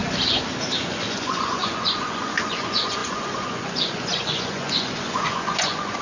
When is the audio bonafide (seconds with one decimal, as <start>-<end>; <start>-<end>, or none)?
0.0-0.8